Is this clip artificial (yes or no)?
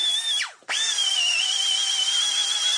no